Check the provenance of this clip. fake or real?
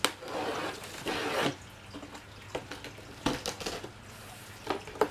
real